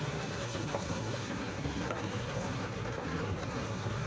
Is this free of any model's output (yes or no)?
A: no